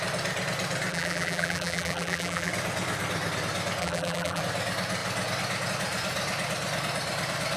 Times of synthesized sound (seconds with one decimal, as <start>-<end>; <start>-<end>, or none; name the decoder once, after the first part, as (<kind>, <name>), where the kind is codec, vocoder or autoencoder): 0.9-2.5 (vocoder, BigVGAN v2); 3.8-4.4